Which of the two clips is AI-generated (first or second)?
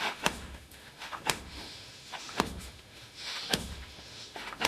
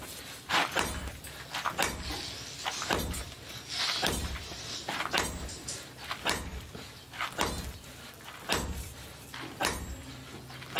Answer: first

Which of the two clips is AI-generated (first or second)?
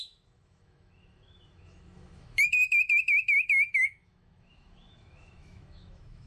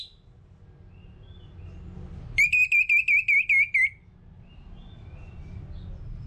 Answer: first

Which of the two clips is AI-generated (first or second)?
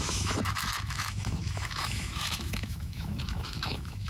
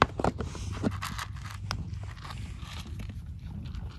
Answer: first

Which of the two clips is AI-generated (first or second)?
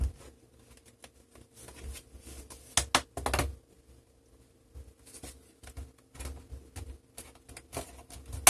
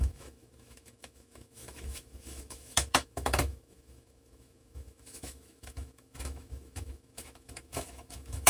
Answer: second